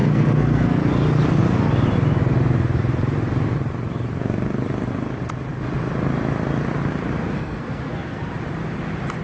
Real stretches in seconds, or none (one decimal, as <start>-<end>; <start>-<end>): 0.8-7.2; 8.2-9.2

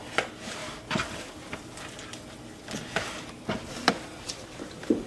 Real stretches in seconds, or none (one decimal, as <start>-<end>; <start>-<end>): 0.6-3.7